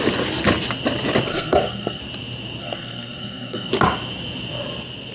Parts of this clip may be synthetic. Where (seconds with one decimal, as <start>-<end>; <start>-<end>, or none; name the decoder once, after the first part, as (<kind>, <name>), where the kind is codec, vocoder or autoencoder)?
1.3-2.0 (codec, SNAC); 2.6-3.7